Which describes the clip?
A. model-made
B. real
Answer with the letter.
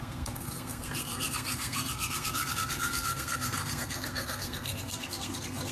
A